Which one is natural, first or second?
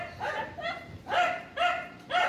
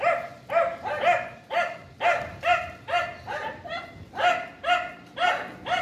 second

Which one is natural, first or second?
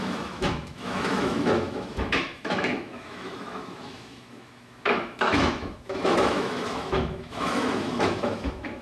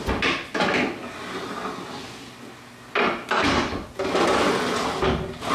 second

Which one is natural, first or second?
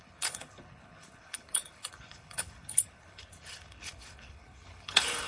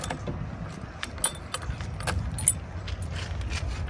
second